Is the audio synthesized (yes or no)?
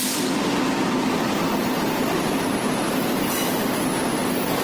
no